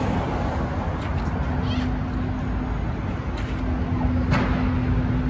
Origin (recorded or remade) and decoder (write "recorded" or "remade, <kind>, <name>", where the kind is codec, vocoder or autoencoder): recorded